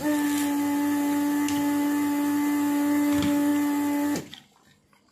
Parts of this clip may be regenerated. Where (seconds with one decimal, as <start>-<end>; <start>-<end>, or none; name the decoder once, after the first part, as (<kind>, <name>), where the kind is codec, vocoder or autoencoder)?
none